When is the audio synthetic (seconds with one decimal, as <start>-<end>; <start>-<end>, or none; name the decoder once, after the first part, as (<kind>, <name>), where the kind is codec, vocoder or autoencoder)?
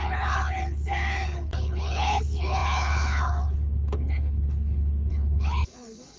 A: 0.0-6.2 (codec, HILCodec)